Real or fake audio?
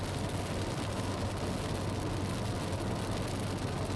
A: real